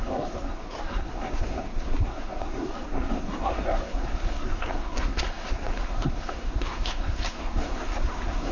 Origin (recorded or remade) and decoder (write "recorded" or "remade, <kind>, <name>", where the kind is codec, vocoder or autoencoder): remade, codec, SNAC